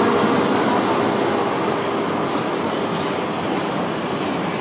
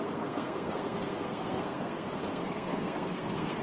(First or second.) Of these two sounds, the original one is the first